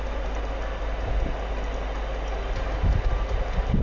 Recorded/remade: recorded